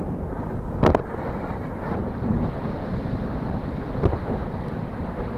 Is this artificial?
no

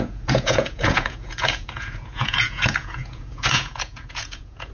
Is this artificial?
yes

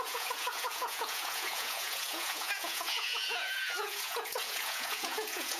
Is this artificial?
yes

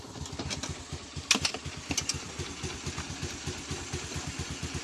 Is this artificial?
no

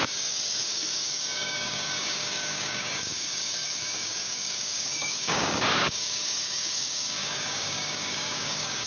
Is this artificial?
yes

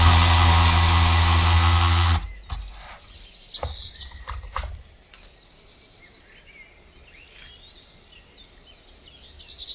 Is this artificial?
no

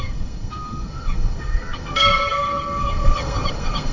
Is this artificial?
yes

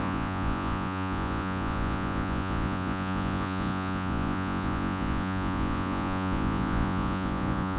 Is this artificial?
yes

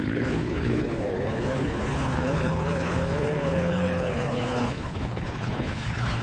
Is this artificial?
yes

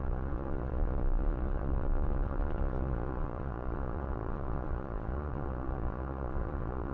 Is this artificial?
yes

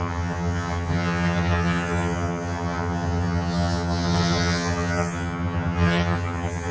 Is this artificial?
yes